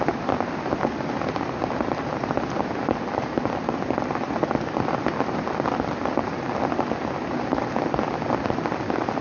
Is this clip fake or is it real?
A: real